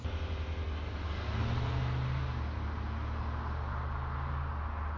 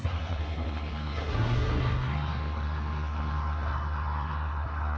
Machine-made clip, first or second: second